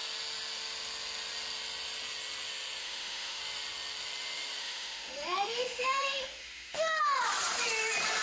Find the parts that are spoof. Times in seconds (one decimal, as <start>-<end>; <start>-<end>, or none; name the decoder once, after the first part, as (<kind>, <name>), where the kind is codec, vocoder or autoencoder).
2.8-3.4 (autoencoder, DAC-VAE); 4.6-7.2